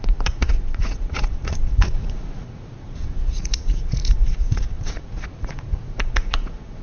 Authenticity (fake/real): fake